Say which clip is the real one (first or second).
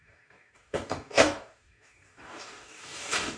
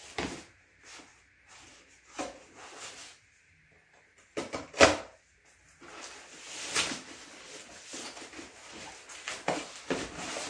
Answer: second